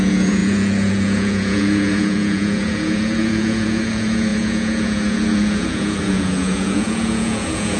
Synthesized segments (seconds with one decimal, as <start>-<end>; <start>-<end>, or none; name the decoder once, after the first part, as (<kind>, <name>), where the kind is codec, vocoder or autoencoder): 0.0-7.8 (vocoder, Vocos)